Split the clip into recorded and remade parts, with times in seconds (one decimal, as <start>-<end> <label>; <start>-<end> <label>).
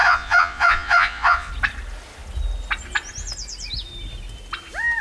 0.0-1.5 remade; 1.5-5.0 recorded